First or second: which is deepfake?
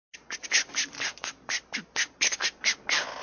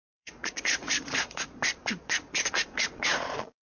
second